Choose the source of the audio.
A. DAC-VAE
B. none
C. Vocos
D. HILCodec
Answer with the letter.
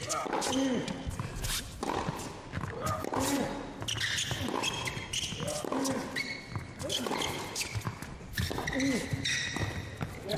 B